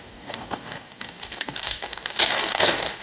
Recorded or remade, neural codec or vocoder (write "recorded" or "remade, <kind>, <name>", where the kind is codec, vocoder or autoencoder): remade, codec, DAC